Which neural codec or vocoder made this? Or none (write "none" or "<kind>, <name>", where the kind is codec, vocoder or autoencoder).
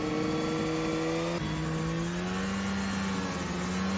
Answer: none